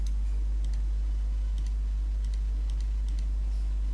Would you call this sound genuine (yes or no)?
yes